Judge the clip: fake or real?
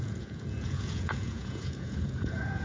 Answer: fake